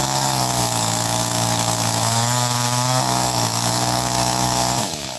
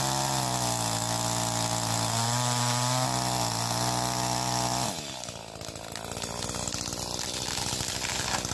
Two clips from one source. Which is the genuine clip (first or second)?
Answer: second